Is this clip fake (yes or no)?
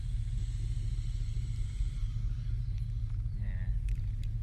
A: yes